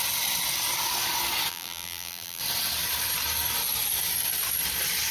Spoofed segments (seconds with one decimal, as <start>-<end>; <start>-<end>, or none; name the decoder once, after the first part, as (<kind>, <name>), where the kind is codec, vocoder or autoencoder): 1.5-2.4 (vocoder, BigVGAN v2)